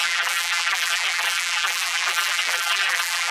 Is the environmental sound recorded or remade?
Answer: remade